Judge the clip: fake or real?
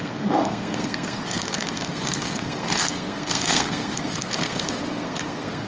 fake